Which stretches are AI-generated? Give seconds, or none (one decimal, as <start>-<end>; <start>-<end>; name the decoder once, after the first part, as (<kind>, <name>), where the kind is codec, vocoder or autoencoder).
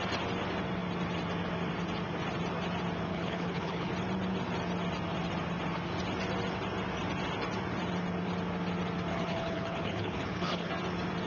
3.1-3.9 (codec, HILCodec); 9.1-10.7